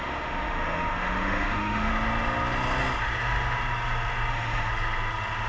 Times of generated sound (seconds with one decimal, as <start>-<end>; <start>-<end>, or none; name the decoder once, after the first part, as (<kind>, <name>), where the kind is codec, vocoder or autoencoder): 0.0-1.9 (autoencoder, DAC-VAE); 4.3-4.7